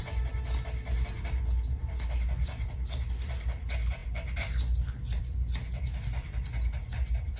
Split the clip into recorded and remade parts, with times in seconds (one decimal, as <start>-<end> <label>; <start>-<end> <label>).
0.0-7.4 recorded